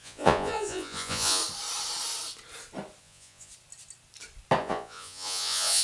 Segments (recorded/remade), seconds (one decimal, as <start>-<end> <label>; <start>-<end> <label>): 0.0-1.4 remade; 1.4-3.0 recorded; 3.0-3.5 remade; 3.5-4.6 recorded; 4.6-5.8 remade